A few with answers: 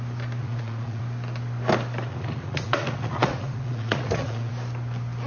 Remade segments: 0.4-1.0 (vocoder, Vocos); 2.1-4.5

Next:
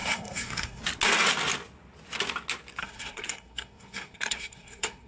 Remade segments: 0.0-0.8 (codec, SNAC); 2.8-5.1

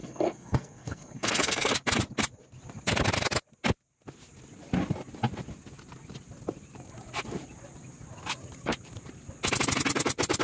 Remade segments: 0.0-1.7 (codec, SNAC)

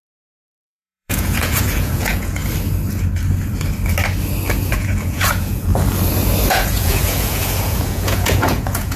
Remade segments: 0.0-2.4 (vocoder, Vocos); 4.7-5.7; 6.5-9.0

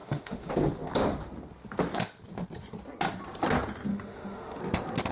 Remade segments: 0.0-0.5 (autoencoder, DAC-VAE); 3.9-4.6

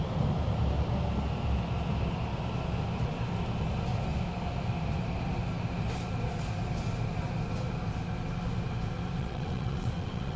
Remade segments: 9.2-10.4 (vocoder, WaveNeXt)

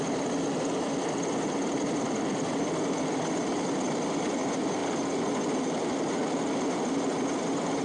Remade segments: none

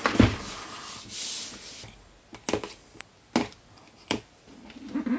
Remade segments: none